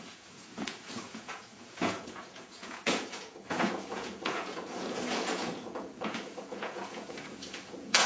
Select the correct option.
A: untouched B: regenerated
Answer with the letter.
B